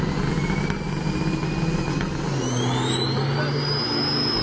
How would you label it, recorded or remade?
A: recorded